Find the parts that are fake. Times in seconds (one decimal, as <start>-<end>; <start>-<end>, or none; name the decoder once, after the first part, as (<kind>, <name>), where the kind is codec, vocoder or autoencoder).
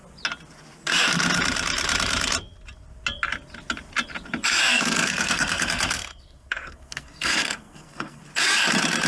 4.7-8.2 (codec, SNAC)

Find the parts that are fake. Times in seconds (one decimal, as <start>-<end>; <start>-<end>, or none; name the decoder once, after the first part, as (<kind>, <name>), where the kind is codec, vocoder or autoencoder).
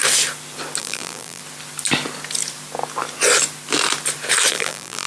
0.8-1.4 (vocoder, BigVGAN v2); 4.5-5.1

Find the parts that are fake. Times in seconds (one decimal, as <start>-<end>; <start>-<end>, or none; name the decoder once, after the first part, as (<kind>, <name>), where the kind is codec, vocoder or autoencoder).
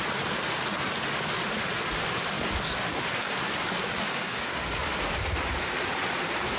3.9-4.8 (codec, DAC)